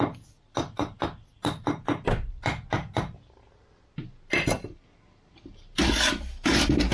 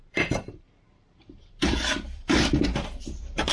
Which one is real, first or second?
first